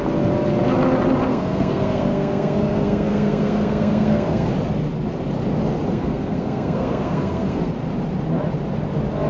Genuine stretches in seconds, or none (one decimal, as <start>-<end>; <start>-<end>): 0.0-1.3; 4.5-5.9; 7.7-9.3